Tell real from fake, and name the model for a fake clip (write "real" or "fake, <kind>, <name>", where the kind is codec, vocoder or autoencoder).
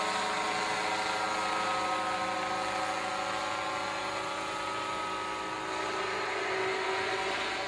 real